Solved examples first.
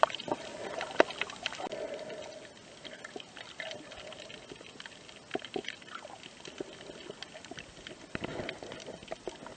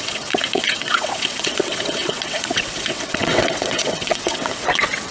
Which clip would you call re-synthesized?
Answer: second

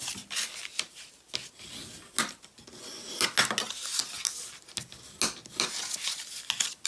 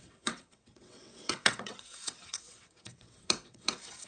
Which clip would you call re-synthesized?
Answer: second